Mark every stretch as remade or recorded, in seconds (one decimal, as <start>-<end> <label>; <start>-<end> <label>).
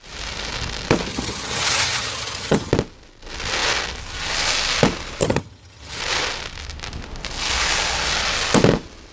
0.0-1.1 recorded; 1.1-2.7 remade; 2.7-5.2 recorded; 5.2-6.0 remade; 6.0-9.1 recorded